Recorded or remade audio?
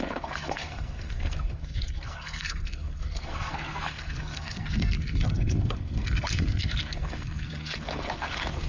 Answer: remade